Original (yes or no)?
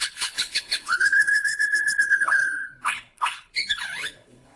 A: no